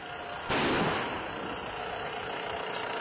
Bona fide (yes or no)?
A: yes